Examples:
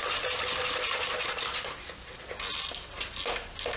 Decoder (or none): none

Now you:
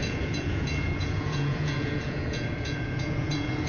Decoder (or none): vocoder, Vocos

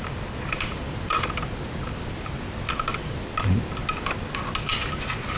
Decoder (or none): none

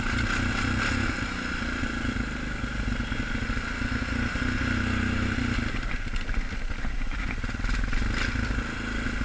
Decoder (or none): none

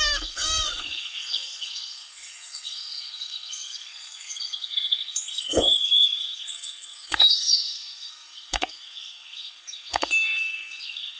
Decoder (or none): codec, SNAC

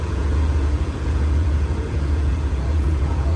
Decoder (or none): vocoder, Vocos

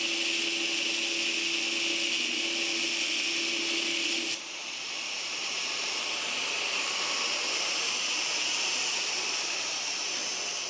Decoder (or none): none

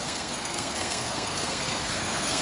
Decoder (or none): codec, SNAC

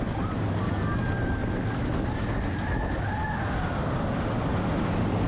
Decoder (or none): none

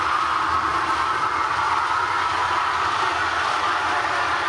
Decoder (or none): none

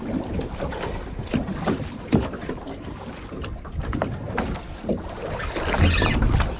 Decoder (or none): none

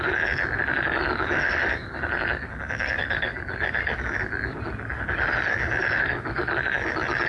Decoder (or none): none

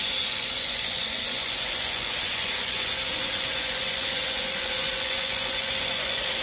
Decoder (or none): vocoder, Vocos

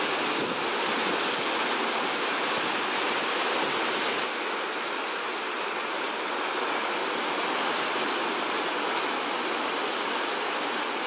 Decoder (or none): none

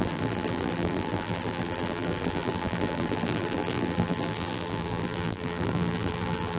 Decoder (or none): vocoder, BigVGAN v2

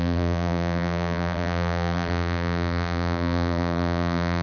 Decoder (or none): vocoder, BigVGAN v2